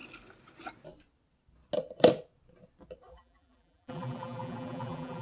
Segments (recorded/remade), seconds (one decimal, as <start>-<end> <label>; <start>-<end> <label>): 0.0-3.1 recorded; 3.1-5.2 remade